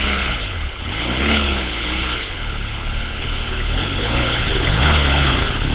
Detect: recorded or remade remade